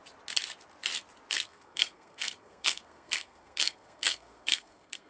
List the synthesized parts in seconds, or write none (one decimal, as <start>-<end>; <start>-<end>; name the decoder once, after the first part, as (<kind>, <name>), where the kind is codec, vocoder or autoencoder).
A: 1.3-5.1 (codec, SNAC)